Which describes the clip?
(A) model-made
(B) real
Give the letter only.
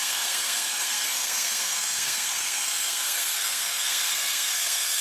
A